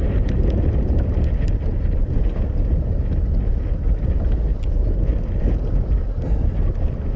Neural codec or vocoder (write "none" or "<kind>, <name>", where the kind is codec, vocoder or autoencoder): none